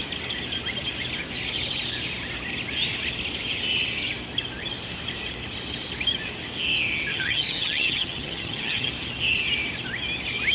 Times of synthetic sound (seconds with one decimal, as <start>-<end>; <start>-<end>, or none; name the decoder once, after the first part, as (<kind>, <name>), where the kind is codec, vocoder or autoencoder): 7.1-8.9 (vocoder, HiFi-GAN)